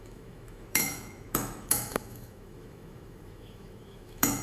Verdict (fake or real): fake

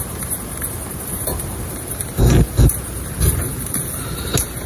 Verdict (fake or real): fake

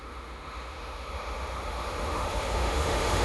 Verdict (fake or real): fake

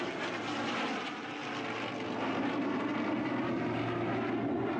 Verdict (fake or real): real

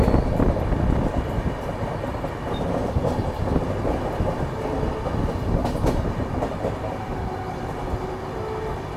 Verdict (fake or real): real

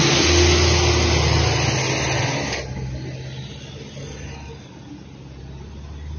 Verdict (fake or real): real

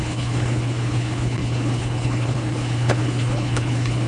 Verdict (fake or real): fake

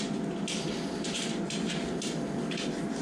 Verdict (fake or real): real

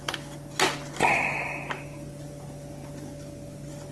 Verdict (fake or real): real